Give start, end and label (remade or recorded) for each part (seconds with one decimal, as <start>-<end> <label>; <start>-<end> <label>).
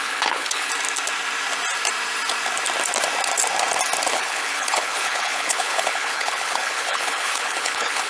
0.0-0.7 remade; 0.7-4.1 recorded; 4.1-8.1 remade